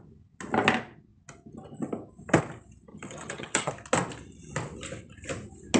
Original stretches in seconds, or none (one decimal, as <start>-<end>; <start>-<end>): 0.0-2.9; 3.7-5.8